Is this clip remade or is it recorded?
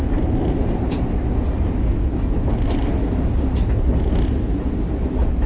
recorded